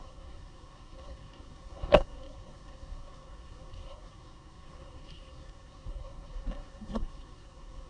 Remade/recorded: remade